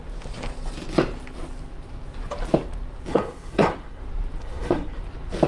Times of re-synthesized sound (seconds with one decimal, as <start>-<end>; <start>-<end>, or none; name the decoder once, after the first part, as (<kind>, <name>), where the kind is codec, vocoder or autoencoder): 3.1-4.0 (codec, SNAC); 4.4-5.0